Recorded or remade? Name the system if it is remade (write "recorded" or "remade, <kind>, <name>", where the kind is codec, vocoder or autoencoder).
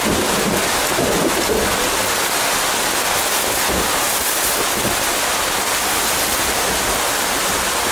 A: recorded